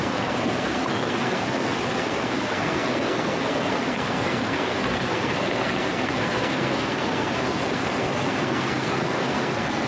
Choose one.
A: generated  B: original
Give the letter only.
A